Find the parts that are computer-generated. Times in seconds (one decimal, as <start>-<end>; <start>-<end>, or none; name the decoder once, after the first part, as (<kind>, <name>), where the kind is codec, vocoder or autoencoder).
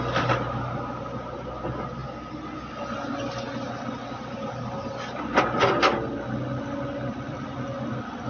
none